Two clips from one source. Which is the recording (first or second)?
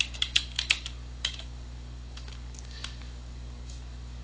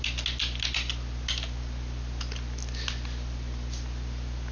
second